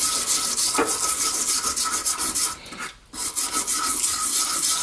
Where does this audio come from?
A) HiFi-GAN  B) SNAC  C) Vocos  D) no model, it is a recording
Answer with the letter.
D